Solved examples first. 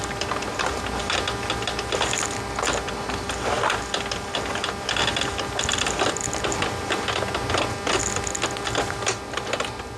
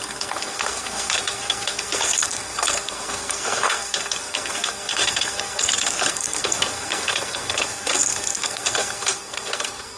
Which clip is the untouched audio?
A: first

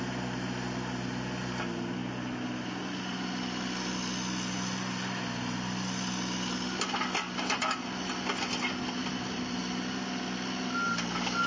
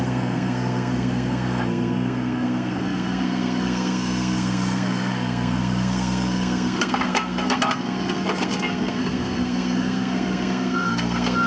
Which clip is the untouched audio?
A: first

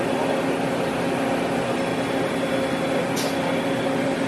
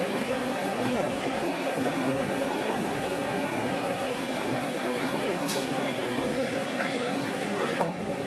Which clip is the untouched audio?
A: first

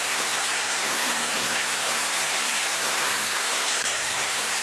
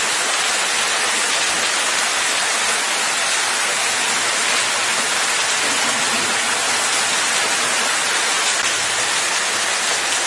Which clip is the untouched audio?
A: second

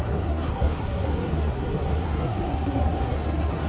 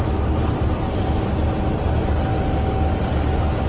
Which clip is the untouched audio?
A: second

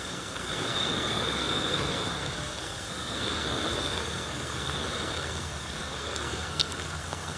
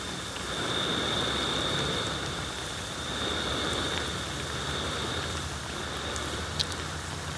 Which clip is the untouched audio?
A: second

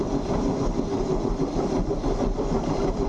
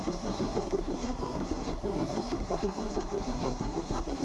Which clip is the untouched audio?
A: first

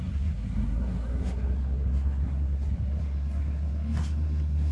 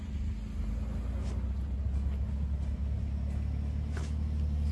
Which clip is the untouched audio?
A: second